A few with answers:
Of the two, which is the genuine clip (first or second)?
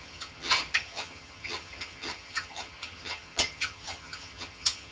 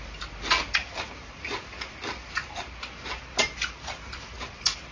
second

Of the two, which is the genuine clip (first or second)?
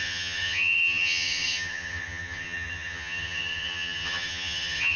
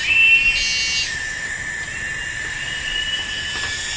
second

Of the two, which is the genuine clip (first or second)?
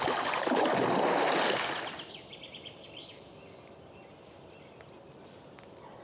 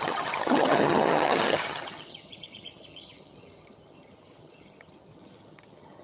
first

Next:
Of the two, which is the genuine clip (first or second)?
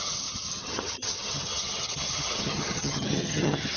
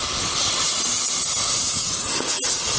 second